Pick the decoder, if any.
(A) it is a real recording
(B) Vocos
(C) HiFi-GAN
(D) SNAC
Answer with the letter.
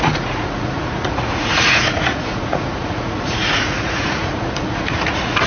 B